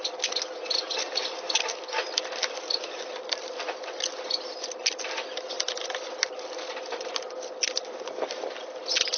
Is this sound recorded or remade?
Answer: recorded